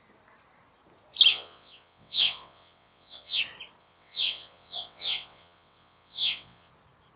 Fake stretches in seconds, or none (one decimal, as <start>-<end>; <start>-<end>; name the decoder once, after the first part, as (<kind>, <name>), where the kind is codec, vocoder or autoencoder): 1.3-3.4 (vocoder, WaveNeXt); 3.8-6.7